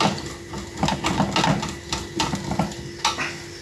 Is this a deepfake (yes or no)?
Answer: no